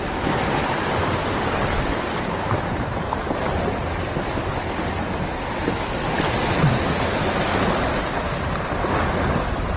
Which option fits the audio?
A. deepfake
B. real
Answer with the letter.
B